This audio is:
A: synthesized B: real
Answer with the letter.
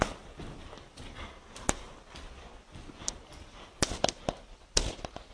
A